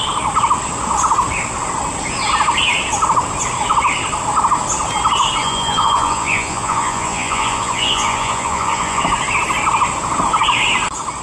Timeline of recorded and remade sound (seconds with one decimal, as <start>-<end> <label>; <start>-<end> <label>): 0.0-5.4 recorded; 5.4-9.0 remade; 9.0-11.2 recorded